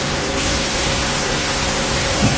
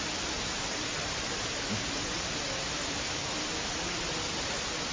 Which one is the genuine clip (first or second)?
second